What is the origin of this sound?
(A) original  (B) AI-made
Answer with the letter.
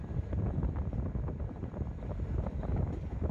A